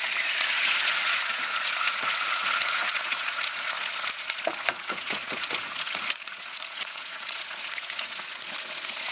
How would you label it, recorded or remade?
remade